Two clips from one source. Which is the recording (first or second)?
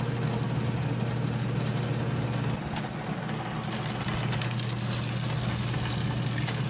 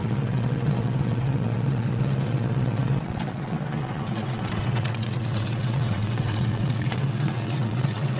first